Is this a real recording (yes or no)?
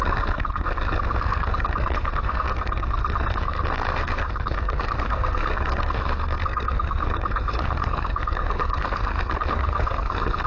no